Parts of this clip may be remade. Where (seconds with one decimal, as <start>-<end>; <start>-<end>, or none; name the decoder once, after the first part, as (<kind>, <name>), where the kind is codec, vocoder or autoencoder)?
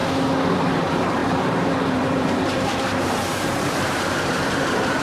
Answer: 0.6-5.0 (vocoder, BigVGAN v2)